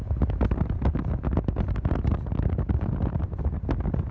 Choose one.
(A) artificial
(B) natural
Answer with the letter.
B